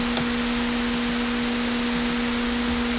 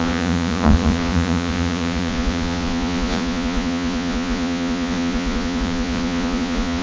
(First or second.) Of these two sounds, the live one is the first